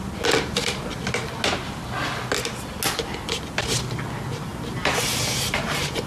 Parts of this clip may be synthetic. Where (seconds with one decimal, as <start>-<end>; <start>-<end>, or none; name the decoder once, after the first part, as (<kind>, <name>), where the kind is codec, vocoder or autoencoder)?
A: 4.5-6.1 (vocoder, BigVGAN v2)